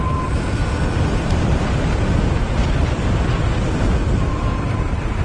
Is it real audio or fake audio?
real